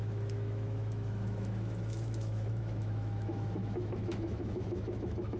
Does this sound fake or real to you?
fake